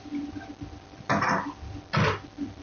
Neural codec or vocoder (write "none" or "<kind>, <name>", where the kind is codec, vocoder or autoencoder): none